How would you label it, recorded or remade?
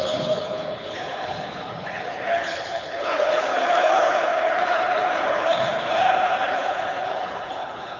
remade